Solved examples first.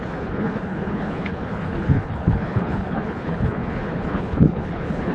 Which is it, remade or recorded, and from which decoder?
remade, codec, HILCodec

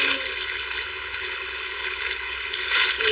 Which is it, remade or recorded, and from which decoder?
remade, codec, HILCodec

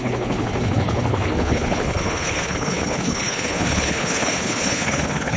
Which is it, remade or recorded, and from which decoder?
remade, codec, HILCodec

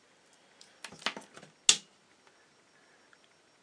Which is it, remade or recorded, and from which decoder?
recorded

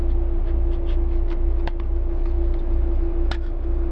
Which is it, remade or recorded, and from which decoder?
recorded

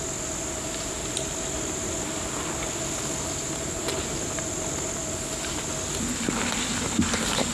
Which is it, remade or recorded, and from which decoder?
recorded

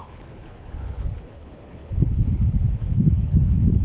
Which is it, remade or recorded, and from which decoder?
remade, codec, HILCodec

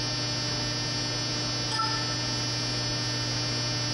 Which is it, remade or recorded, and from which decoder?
recorded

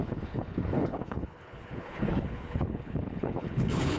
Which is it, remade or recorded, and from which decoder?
remade, codec, HILCodec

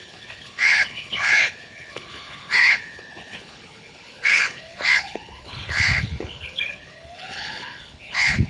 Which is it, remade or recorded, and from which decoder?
remade, codec, HILCodec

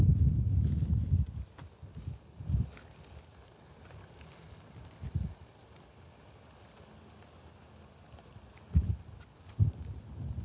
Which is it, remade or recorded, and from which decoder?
recorded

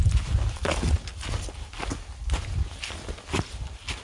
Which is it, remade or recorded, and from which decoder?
recorded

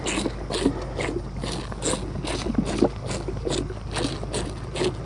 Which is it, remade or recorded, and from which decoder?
recorded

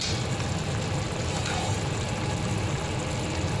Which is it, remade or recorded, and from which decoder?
recorded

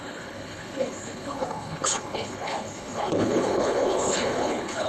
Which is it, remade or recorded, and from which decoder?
remade, codec, HILCodec